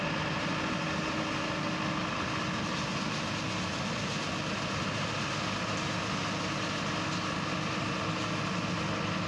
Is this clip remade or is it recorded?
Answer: recorded